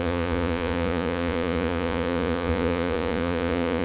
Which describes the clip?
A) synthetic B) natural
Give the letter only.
A